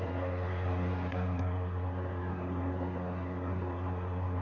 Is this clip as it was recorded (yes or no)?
no